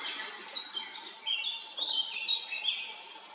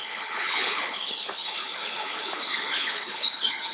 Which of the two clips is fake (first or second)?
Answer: second